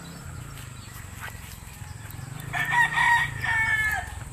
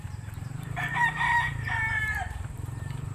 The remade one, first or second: second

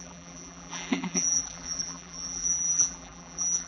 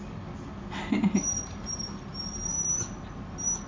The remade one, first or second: first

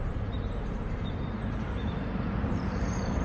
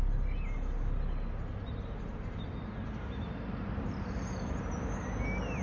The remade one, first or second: first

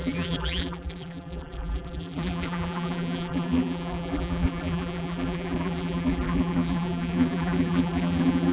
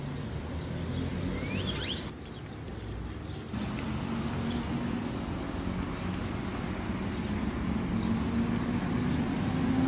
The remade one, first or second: first